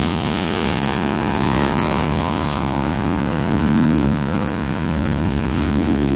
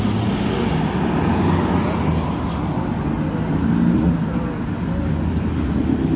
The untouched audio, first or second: second